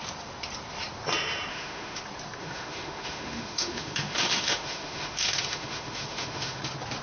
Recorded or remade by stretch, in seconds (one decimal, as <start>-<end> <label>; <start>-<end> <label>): 0.0-1.5 recorded; 1.5-2.0 remade; 2.0-2.4 recorded; 2.4-6.6 remade; 6.6-7.0 recorded

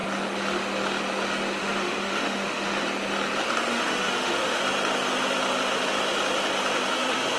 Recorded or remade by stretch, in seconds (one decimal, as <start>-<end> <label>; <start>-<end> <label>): 0.0-1.6 recorded; 1.6-2.8 remade; 2.8-3.7 recorded; 3.7-4.6 remade; 4.6-6.9 recorded; 6.9-7.4 remade

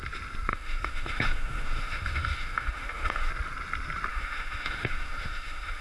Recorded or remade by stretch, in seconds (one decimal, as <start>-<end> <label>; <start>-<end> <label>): 0.0-0.5 recorded; 0.5-3.3 remade; 3.3-4.1 recorded; 4.1-5.8 remade

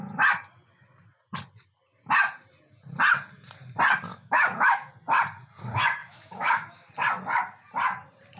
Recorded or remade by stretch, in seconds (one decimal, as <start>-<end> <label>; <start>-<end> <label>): 0.0-4.1 recorded; 4.1-4.9 remade; 4.9-6.0 recorded; 6.0-6.9 remade; 6.9-8.4 recorded

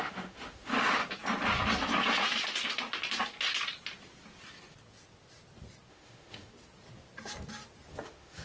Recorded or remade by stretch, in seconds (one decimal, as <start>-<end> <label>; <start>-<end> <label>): 0.0-1.0 remade; 1.0-5.9 recorded; 5.9-6.5 remade; 6.5-7.9 recorded; 7.9-8.4 remade